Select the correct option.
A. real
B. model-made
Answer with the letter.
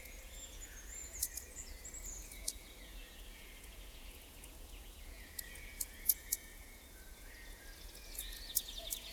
B